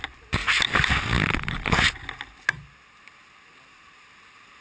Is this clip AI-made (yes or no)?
no